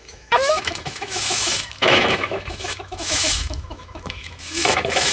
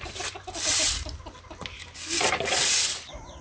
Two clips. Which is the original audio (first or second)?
second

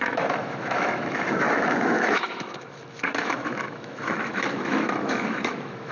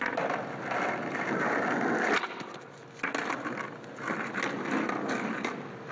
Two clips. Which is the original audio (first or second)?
second